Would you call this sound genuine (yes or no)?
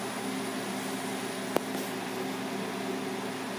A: yes